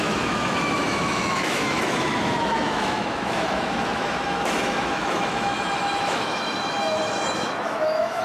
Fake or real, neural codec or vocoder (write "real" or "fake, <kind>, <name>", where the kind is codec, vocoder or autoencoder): fake, autoencoder, DAC-VAE